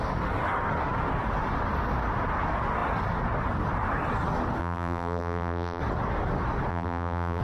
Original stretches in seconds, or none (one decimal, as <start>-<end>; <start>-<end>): 0.0-4.6; 5.8-6.7